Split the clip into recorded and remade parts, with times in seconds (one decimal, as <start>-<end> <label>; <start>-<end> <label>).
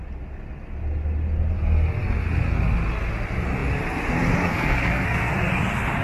0.0-4.5 recorded; 4.5-5.3 remade; 5.3-6.0 recorded